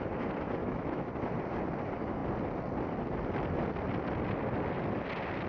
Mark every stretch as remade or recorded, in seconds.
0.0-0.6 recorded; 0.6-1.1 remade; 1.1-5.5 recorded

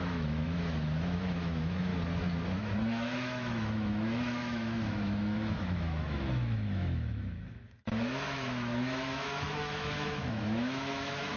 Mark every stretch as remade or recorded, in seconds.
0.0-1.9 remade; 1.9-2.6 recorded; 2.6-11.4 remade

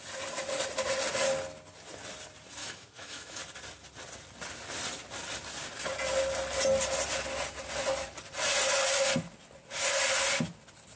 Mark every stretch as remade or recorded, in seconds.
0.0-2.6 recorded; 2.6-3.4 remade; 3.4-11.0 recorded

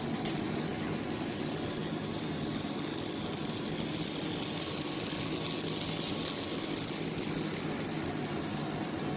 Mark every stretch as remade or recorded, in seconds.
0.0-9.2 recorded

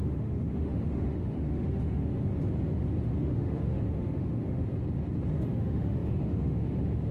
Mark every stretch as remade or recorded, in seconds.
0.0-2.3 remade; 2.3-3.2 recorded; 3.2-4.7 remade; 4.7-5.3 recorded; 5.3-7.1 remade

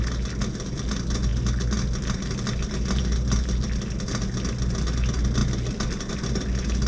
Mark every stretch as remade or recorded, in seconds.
0.0-6.9 recorded

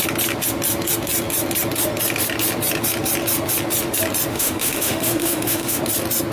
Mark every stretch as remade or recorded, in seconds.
0.0-4.3 recorded; 4.3-5.8 remade; 5.8-6.3 recorded

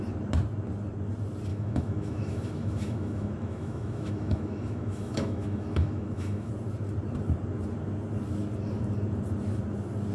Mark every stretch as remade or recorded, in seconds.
0.0-1.5 recorded; 1.5-6.5 remade; 6.5-10.1 recorded